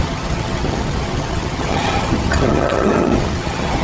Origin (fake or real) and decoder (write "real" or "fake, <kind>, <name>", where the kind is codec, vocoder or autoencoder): fake, vocoder, HiFi-GAN